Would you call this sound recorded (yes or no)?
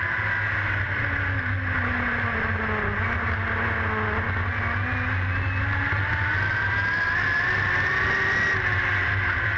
yes